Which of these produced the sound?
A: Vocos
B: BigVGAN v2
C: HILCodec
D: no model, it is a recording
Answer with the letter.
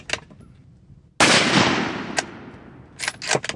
D